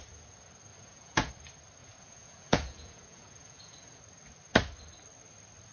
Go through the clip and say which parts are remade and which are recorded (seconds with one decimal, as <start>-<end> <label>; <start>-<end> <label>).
0.0-0.7 recorded; 0.7-1.3 remade; 1.3-1.8 recorded; 1.8-4.0 remade; 4.0-5.7 recorded